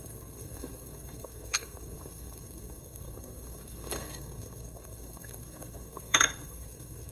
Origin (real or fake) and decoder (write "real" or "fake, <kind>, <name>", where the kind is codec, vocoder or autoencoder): fake, codec, SNAC